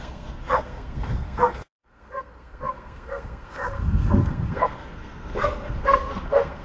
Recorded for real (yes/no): no